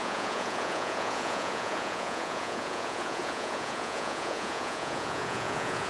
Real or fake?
fake